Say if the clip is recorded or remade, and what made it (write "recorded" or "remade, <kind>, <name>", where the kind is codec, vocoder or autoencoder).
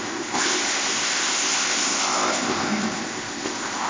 remade, codec, ZipCodec